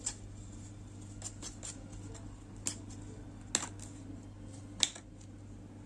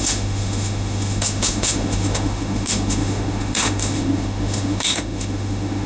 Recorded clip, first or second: first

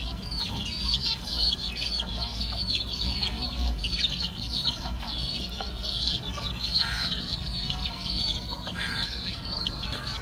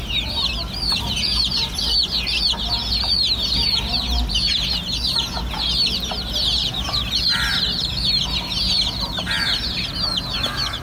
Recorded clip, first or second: second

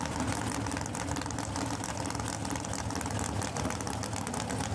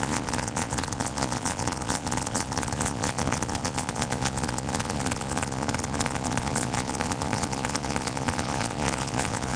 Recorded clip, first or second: first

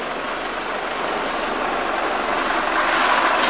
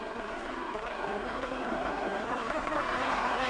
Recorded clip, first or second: first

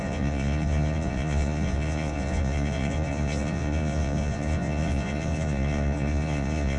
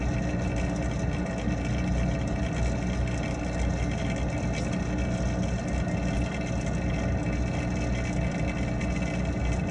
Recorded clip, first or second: second